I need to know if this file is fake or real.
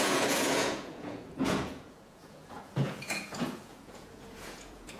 fake